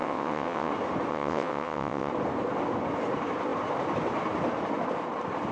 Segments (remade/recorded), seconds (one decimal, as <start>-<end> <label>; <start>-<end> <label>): 0.0-0.7 remade; 0.7-1.1 recorded; 1.1-2.1 remade; 2.1-5.5 recorded